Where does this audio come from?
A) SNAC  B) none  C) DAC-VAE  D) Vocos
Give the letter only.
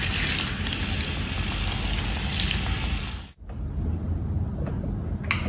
B